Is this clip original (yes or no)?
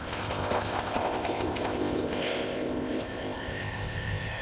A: no